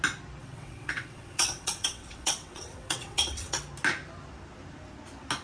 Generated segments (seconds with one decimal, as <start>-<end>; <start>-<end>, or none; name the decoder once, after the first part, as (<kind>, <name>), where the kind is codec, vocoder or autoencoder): 0.4-3.6 (vocoder, WaveNeXt)